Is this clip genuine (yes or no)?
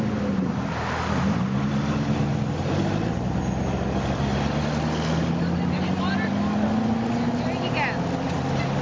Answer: yes